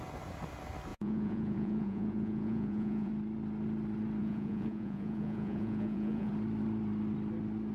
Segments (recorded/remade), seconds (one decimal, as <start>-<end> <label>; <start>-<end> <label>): 0.0-0.9 recorded; 0.9-3.1 remade; 3.1-4.2 recorded; 4.2-6.3 remade; 6.3-7.7 recorded

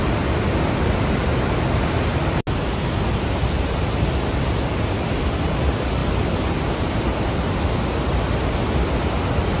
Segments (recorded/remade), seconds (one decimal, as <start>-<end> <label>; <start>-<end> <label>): 0.0-9.6 recorded

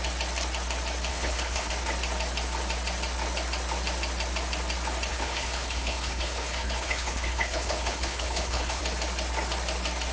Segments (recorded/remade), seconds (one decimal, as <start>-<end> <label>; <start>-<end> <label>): 0.0-1.1 recorded; 1.1-1.7 remade; 1.7-5.1 recorded; 5.1-8.8 remade; 8.8-10.1 recorded

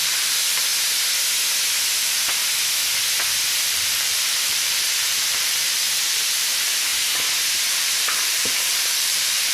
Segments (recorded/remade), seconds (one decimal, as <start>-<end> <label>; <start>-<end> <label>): 0.0-0.7 remade; 0.7-2.0 recorded; 2.0-2.4 remade; 2.4-3.6 recorded; 3.6-6.9 remade; 6.9-7.7 recorded; 7.7-9.5 remade

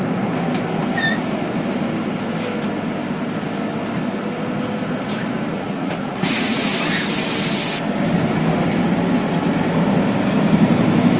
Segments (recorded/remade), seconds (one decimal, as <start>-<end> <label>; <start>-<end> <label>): 0.0-5.5 recorded; 5.5-6.7 remade; 6.7-11.2 recorded